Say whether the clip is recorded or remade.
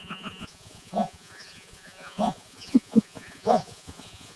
remade